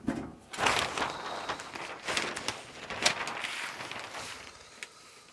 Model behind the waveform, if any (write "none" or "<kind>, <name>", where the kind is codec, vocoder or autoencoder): none